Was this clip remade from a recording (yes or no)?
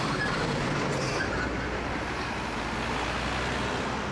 no